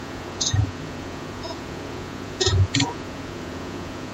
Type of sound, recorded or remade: remade